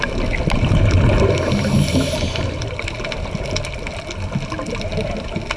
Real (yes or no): yes